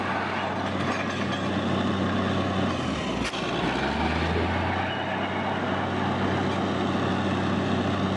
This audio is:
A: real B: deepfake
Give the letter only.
A